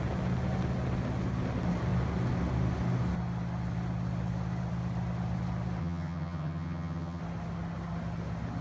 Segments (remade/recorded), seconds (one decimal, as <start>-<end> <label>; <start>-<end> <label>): 0.0-5.8 recorded; 5.8-7.2 remade; 7.2-8.6 recorded